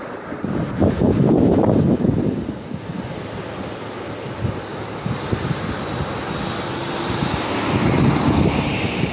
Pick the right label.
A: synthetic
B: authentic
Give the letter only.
B